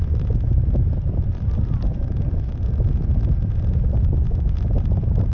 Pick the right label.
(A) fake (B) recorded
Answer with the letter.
B